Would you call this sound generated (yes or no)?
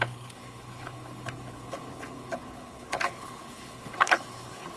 yes